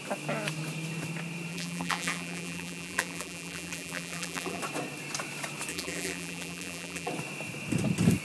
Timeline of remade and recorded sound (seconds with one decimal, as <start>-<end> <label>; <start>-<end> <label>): 0.0-1.5 recorded; 1.5-4.6 remade; 4.6-5.7 recorded; 5.7-7.1 remade; 7.1-8.2 recorded